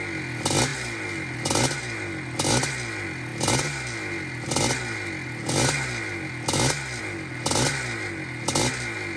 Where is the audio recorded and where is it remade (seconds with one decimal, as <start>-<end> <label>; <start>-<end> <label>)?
0.0-9.2 recorded